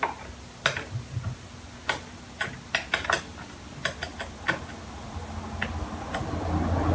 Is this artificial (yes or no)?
no